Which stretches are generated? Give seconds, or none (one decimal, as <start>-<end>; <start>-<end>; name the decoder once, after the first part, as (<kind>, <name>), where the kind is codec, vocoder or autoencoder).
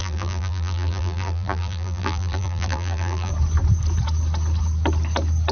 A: 0.0-3.3 (vocoder, BigVGAN v2)